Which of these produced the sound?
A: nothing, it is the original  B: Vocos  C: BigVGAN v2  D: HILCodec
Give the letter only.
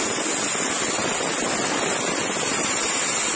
A